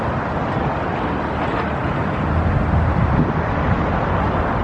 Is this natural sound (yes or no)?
yes